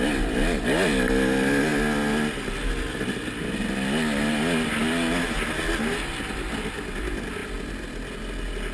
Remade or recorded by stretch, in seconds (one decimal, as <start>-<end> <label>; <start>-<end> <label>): 0.0-8.7 recorded